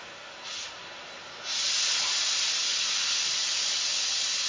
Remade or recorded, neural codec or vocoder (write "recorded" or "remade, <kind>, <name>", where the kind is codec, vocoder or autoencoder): recorded